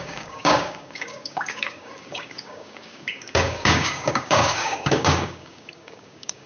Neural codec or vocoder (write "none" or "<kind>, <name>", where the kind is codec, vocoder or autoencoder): codec, DAC